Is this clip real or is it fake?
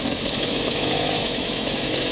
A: fake